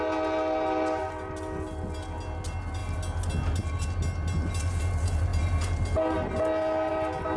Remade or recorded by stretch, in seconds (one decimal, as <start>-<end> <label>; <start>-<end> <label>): 0.0-7.4 recorded